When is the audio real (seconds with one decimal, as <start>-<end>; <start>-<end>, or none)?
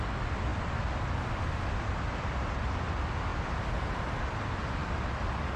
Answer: 0.0-5.6